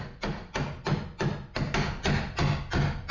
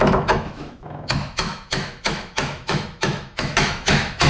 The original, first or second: first